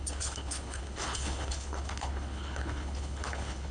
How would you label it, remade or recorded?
remade